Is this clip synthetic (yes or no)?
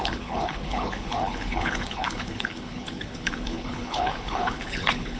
yes